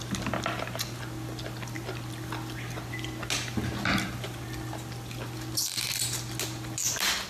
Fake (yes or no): no